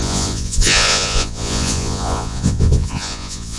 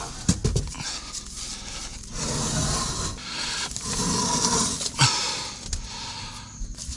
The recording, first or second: second